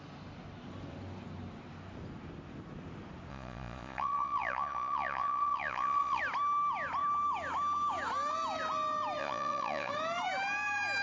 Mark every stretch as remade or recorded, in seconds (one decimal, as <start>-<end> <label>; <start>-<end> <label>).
0.0-3.3 recorded; 3.3-6.2 remade; 6.2-9.2 recorded; 9.2-9.9 remade; 9.9-11.0 recorded